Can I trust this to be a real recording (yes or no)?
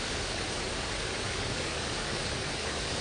no